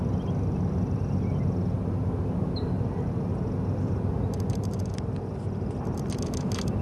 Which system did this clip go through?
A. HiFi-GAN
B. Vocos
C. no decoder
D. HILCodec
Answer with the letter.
C